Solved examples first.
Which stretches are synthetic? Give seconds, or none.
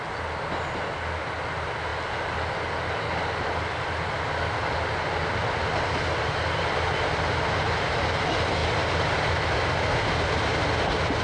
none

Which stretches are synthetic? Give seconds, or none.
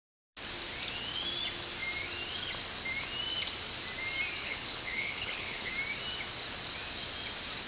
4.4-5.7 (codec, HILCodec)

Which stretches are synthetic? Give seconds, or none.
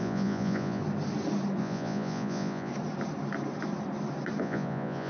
0.0-0.8 (vocoder, Vocos); 1.6-2.7; 4.4-5.1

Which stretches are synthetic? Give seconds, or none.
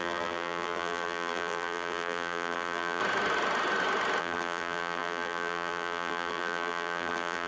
0.0-3.0 (vocoder, BigVGAN v2); 4.2-7.5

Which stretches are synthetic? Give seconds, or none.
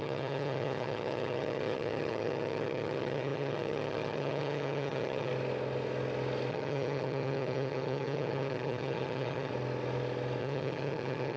0.0-5.3 (vocoder, HiFi-GAN); 6.5-9.5; 10.4-11.4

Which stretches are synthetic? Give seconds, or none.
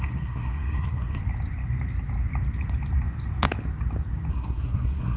0.0-1.2 (codec, SNAC); 4.3-5.2